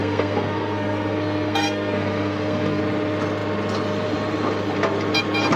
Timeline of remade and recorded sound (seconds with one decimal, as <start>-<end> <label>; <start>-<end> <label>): 0.0-2.8 remade; 2.8-5.6 recorded